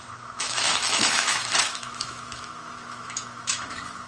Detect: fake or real fake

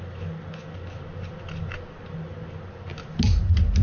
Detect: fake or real real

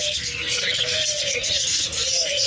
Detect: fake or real fake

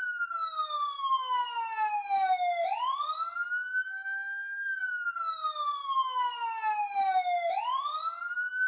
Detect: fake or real real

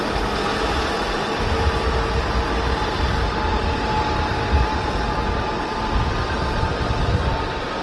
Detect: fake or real real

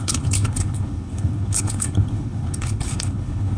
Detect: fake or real fake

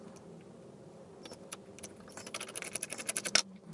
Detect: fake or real real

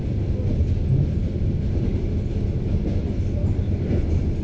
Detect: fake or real real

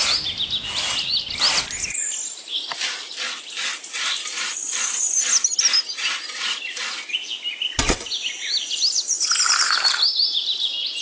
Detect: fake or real real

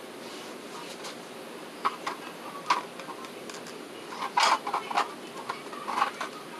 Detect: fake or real real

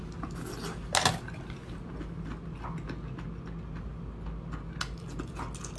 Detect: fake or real real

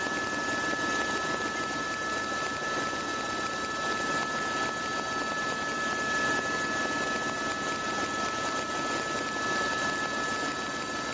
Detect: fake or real real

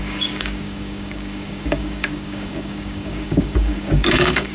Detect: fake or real fake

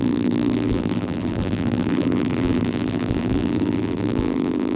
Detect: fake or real fake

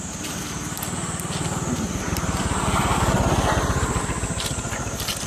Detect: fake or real real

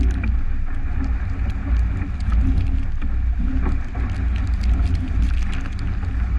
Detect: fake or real real